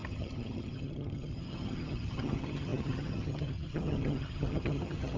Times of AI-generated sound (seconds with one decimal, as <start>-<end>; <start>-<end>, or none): 0.0-5.2